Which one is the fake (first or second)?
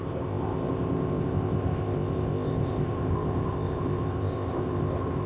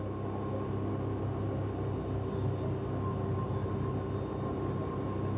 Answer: first